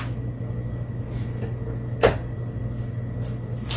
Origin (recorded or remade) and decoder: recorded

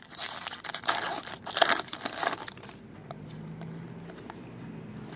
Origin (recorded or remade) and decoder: recorded